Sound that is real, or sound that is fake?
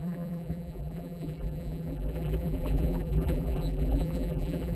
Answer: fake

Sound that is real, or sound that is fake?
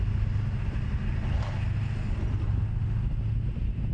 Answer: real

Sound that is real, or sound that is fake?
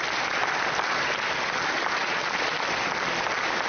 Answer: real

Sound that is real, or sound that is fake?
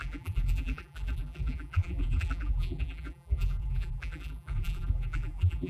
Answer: fake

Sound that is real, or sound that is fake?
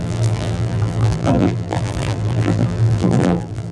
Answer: fake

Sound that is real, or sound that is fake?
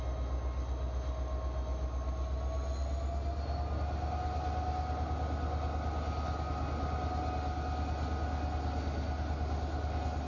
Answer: real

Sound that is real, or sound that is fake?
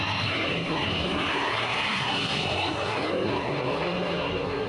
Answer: fake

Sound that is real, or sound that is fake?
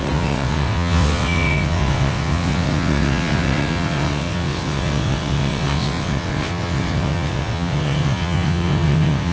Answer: fake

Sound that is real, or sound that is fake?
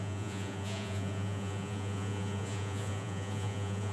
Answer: fake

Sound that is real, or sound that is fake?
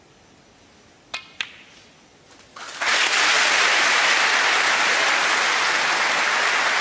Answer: real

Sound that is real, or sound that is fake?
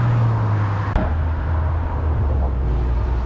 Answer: real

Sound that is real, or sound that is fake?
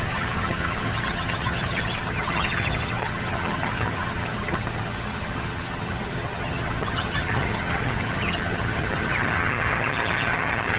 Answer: fake